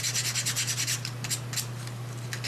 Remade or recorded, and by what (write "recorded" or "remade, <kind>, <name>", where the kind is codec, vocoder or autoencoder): recorded